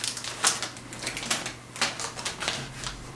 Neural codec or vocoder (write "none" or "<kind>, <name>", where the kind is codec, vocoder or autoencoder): none